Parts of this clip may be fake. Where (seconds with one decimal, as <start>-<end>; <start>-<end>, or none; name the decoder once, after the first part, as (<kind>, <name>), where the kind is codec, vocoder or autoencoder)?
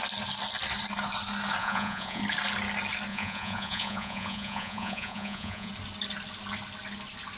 1.6-2.2 (vocoder, Vocos); 3.1-5.7